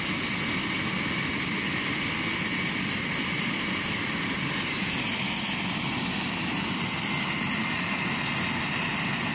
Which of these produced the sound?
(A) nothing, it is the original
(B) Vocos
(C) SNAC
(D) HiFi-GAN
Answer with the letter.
A